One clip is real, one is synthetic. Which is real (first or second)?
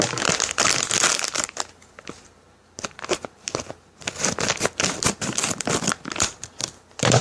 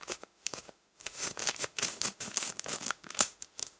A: first